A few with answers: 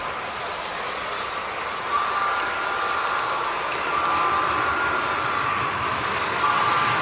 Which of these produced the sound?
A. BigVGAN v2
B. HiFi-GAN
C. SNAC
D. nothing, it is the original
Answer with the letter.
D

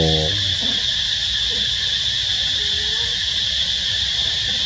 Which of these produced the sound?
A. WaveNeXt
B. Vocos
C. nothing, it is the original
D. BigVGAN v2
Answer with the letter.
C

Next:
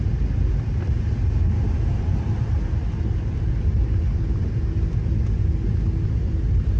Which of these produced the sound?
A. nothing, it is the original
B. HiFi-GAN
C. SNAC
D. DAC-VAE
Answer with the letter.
A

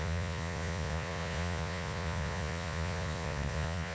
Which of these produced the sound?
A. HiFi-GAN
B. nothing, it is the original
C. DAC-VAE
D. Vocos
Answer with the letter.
D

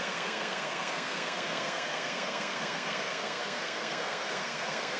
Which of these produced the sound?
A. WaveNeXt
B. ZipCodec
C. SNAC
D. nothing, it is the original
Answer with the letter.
C